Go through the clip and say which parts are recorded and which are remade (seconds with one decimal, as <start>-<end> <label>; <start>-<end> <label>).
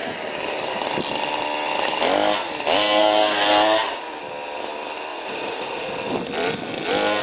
0.0-5.1 recorded; 5.1-5.9 remade; 5.9-7.2 recorded